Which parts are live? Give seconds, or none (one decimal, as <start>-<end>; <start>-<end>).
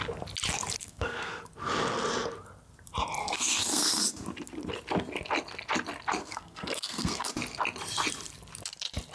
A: 0.0-0.8; 1.4-3.2; 4.0-6.2; 7.3-9.1